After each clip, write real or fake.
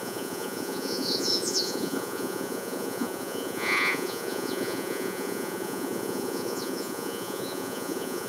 fake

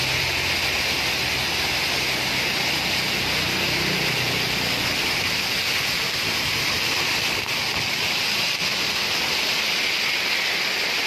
real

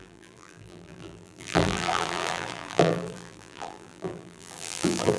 fake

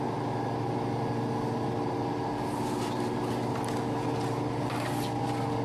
real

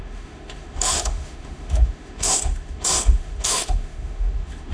fake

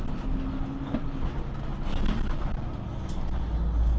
real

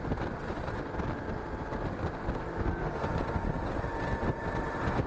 real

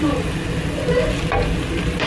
real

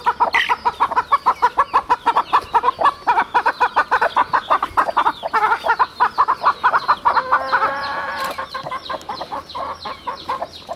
real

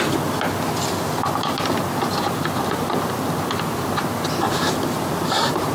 real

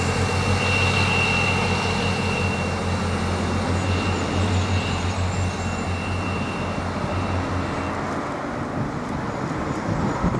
real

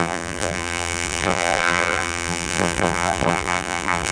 fake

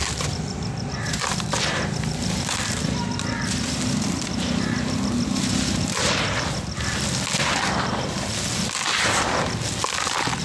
real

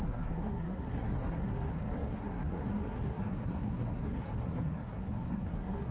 fake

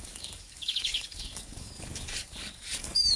fake